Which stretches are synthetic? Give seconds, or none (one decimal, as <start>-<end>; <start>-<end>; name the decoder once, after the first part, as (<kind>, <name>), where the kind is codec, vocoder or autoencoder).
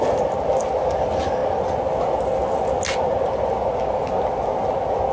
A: none